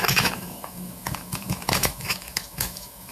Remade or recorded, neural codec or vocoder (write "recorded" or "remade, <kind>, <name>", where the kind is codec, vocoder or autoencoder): remade, autoencoder, DAC-VAE